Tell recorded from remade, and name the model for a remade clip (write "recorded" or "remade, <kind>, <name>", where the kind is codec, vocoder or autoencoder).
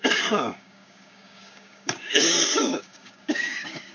remade, codec, DAC